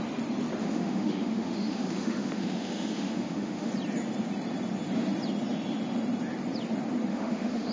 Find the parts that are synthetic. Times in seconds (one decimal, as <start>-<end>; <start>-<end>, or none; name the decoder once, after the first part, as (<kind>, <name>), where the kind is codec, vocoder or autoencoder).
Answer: 0.6-3.7 (autoencoder, DAC-VAE); 7.1-7.7

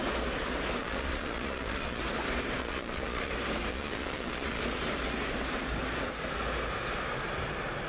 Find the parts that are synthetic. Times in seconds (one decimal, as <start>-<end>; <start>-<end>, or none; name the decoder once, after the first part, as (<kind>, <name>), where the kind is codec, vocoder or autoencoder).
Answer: 0.8-2.0 (vocoder, Vocos); 2.6-3.3; 3.7-4.6

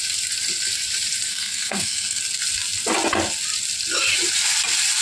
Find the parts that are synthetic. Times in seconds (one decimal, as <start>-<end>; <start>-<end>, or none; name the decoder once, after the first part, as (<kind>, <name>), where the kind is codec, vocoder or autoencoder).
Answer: 1.3-2.2 (codec, SNAC)

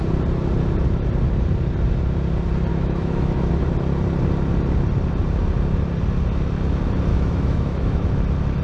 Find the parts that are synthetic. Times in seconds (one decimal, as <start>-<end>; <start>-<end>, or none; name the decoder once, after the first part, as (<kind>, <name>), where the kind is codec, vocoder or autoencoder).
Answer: 2.7-3.5 (autoencoder, DAC-VAE); 7.1-8.1

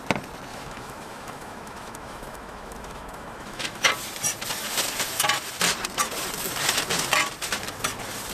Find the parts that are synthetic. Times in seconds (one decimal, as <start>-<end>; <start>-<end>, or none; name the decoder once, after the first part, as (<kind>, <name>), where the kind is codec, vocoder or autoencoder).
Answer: 0.5-3.9 (autoencoder, DAC-VAE)